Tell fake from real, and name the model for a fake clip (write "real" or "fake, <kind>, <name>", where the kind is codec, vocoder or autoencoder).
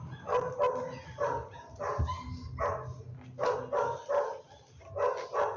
real